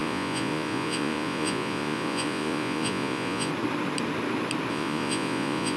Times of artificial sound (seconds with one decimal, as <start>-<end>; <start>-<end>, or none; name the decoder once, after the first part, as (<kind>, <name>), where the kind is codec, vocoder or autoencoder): 0.0-3.5 (vocoder, Vocos); 4.7-5.8